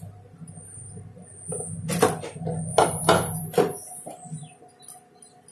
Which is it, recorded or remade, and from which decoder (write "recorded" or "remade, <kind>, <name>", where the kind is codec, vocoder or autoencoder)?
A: recorded